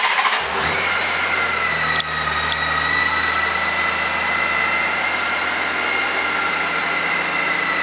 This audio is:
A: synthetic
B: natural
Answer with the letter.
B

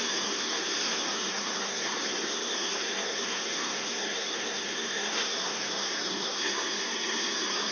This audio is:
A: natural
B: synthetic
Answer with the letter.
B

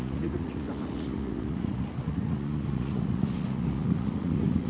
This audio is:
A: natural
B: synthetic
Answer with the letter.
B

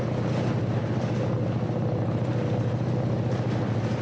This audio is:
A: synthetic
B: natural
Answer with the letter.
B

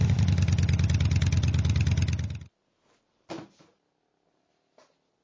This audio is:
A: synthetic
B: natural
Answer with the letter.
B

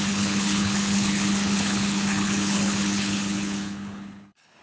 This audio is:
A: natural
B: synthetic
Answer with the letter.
B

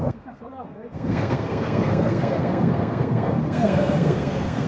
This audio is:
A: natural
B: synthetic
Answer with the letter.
B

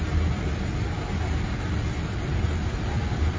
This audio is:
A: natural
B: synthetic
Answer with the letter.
A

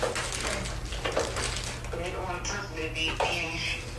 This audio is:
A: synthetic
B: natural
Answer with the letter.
B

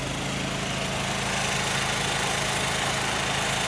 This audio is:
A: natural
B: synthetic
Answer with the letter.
A